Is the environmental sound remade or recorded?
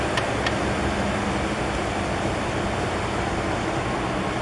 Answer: recorded